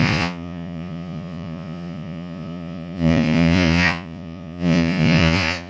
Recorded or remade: remade